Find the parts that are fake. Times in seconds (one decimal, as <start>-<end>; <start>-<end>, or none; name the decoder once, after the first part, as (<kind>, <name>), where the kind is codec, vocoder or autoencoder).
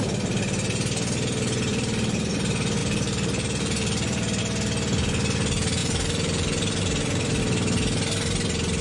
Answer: 1.7-2.3 (vocoder, BigVGAN v2); 2.8-4.4; 5.8-7.4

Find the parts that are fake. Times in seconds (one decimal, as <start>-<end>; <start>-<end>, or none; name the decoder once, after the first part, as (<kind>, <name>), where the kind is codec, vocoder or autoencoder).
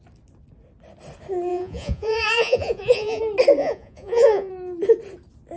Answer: 1.5-3.2 (vocoder, Vocos); 3.6-4.5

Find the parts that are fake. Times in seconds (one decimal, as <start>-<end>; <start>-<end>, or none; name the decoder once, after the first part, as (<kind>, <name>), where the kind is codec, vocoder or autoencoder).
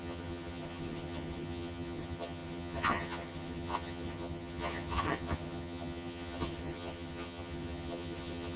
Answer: 0.0-8.6 (vocoder, HiFi-GAN)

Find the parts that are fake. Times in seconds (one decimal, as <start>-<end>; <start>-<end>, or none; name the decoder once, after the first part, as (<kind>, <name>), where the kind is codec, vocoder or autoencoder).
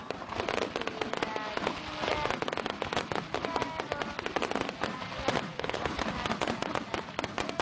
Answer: 5.5-6.1 (codec, HILCodec)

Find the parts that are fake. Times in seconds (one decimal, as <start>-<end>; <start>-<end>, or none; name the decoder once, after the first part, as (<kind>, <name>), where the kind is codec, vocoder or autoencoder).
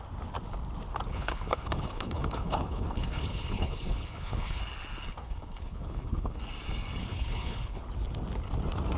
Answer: 1.1-4.6 (codec, HILCodec); 5.2-6.4; 7.0-7.8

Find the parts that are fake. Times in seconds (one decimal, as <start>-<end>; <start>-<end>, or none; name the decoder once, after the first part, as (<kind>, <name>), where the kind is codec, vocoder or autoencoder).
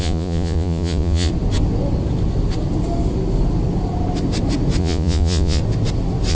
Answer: 0.0-1.3 (vocoder, Vocos); 4.8-5.6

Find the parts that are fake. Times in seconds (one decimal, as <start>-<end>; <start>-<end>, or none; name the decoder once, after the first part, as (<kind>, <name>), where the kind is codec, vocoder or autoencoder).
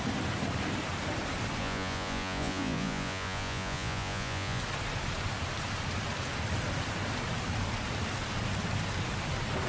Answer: 1.6-4.6 (vocoder, Vocos)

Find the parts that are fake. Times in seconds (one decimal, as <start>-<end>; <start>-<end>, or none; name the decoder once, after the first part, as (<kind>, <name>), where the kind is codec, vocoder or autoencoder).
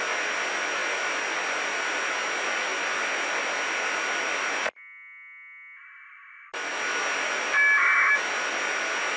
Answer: none